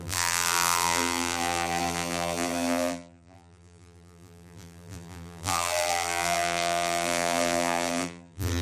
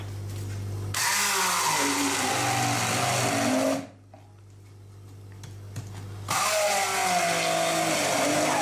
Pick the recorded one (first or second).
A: second